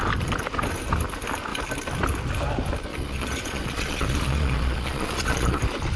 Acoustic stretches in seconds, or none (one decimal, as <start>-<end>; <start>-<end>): 0.0-2.9; 5.6-6.0